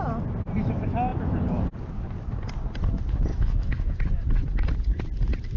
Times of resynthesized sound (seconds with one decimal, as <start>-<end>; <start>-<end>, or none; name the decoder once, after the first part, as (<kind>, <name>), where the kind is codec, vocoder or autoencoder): 3.3-4.0 (autoencoder, DAC-VAE)